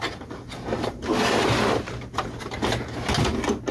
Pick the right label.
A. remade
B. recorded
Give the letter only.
B